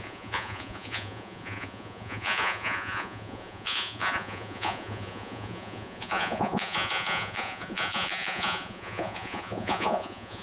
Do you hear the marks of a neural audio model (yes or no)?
yes